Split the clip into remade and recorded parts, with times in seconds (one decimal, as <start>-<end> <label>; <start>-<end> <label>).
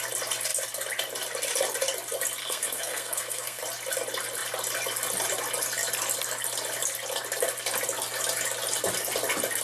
0.0-2.4 recorded; 2.4-3.6 remade; 3.6-9.6 recorded